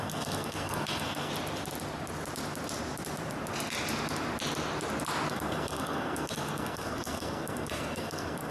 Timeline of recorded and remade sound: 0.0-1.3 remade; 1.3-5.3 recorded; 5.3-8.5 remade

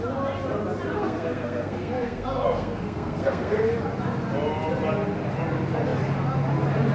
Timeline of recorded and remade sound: 0.0-0.9 recorded; 0.9-3.7 remade; 3.7-6.9 recorded

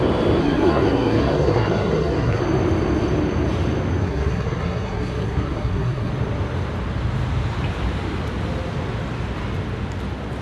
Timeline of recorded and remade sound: 0.0-0.4 recorded; 0.4-2.4 remade; 2.4-4.0 recorded; 4.0-6.1 remade; 6.1-10.4 recorded

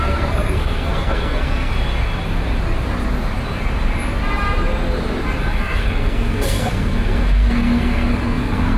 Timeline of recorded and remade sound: 0.0-1.7 remade; 1.7-5.5 recorded; 5.5-8.8 remade

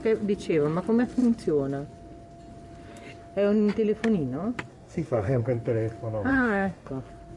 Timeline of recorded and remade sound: 0.0-4.7 recorded; 4.7-5.4 remade; 5.4-6.3 recorded; 6.3-6.9 remade; 6.9-7.4 recorded

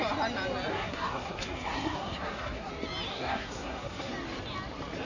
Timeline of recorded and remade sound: 0.0-0.7 recorded; 0.7-2.7 remade; 2.7-3.1 recorded; 3.1-4.1 remade; 4.1-5.0 recorded

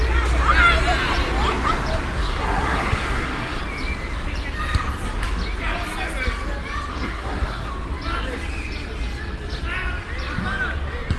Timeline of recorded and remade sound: 0.0-2.2 recorded; 2.2-3.6 remade; 3.6-6.9 recorded; 6.9-7.7 remade; 7.7-11.2 recorded